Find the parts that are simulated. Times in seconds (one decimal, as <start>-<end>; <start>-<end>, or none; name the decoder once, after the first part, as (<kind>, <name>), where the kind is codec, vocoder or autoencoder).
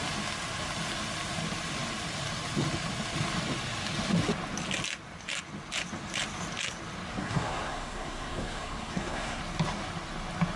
7.2-9.4 (codec, SNAC)